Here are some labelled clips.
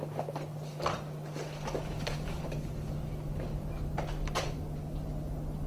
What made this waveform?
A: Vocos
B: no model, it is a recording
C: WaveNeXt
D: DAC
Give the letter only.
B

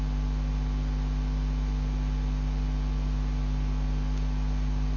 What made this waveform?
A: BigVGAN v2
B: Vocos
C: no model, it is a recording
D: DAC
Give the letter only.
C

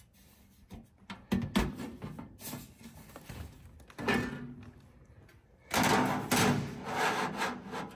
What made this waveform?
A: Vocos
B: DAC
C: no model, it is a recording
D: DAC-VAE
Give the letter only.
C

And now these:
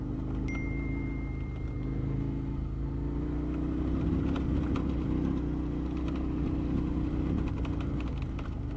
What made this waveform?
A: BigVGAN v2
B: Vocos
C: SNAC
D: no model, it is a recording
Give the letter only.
D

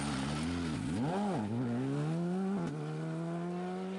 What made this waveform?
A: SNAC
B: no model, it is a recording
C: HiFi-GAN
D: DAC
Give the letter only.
B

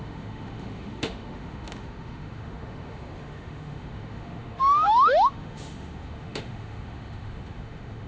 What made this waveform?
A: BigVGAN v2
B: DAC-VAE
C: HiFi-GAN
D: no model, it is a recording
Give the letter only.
B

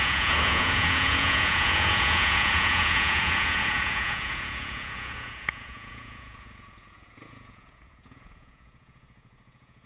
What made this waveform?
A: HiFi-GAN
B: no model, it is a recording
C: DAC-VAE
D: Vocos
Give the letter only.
D